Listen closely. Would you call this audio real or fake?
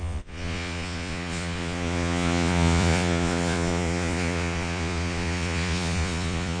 fake